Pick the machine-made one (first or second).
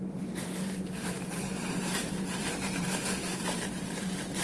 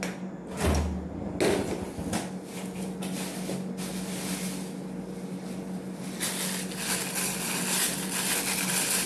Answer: first